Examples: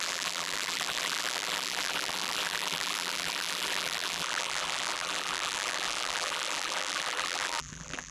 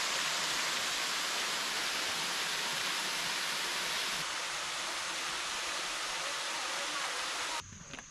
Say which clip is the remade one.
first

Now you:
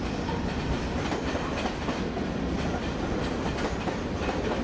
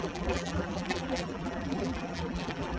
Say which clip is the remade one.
second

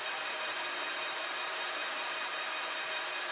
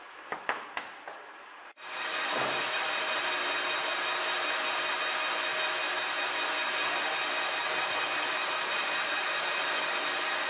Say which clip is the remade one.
first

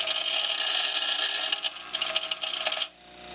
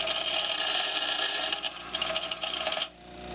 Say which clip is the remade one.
second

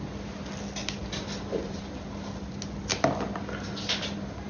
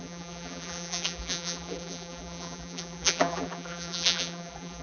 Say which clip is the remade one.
second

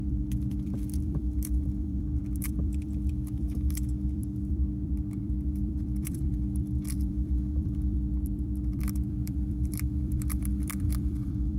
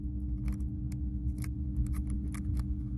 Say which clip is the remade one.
first